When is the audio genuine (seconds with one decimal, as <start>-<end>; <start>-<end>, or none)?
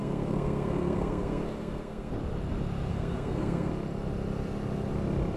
2.1-2.9; 3.7-5.4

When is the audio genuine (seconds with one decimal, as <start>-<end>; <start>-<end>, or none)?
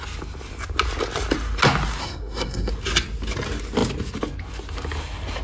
0.0-2.0; 2.7-5.4